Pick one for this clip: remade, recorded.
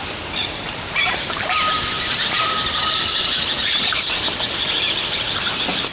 remade